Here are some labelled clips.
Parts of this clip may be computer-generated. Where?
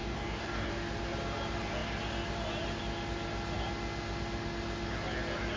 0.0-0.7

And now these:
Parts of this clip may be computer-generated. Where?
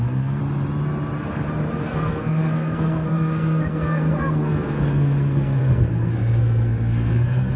0.0-0.4; 1.8-7.6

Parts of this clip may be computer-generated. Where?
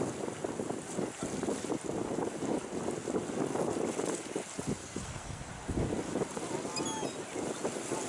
4.8-5.5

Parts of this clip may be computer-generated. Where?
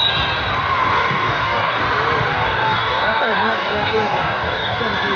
0.8-1.8; 2.3-4.8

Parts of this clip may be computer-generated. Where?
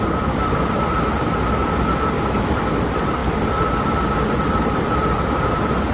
none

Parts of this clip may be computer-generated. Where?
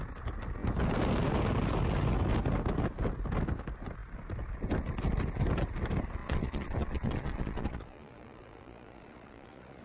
6.2-9.8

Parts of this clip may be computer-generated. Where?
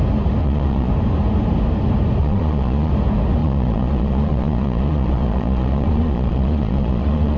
0.4-0.9; 2.2-2.9; 3.4-7.4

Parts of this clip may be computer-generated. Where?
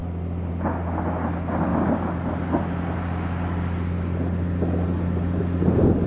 none